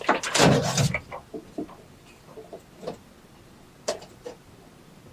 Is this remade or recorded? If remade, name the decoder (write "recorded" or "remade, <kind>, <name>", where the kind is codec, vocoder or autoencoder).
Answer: remade, vocoder, BigVGAN v2